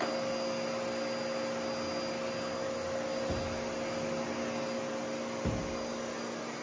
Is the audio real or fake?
real